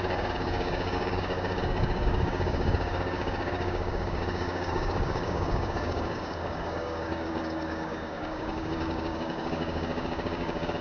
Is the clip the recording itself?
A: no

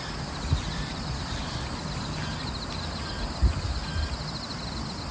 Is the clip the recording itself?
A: yes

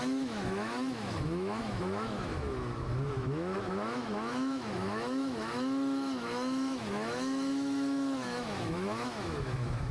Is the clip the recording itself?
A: no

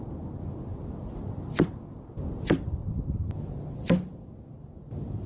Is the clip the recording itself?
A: yes